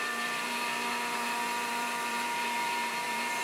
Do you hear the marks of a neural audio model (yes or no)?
yes